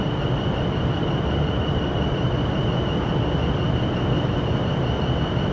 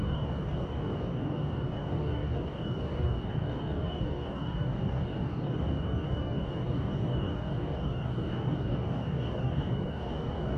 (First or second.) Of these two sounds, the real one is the first